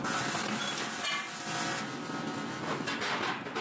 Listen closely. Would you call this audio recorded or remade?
recorded